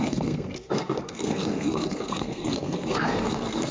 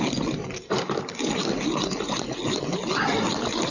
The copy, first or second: first